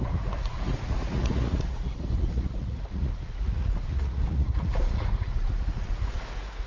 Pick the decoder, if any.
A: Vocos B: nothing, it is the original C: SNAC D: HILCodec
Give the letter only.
A